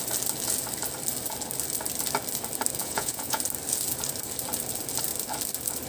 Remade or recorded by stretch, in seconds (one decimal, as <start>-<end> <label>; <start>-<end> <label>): 0.0-2.8 recorded; 2.8-3.4 remade; 3.4-5.9 recorded